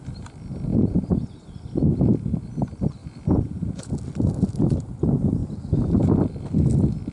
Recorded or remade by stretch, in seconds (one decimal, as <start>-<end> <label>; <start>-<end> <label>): 0.0-0.7 recorded; 0.7-1.4 remade; 1.4-3.0 recorded; 3.0-3.9 remade; 3.9-7.1 recorded